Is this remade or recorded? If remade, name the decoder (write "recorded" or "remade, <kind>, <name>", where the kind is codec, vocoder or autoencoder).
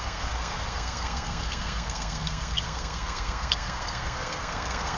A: remade, codec, SNAC